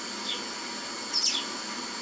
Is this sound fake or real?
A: real